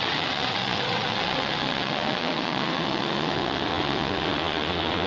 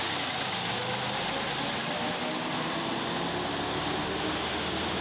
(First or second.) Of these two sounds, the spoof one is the first